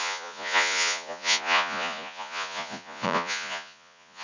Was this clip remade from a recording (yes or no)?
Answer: yes